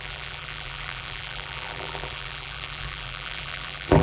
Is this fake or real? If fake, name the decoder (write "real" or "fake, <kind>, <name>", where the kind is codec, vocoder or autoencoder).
fake, vocoder, BigVGAN v2